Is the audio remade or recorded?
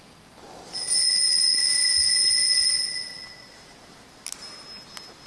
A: recorded